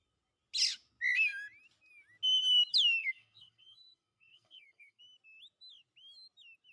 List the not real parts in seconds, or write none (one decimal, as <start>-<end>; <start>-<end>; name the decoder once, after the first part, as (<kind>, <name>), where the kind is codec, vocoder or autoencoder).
3.0-5.0 (codec, SNAC)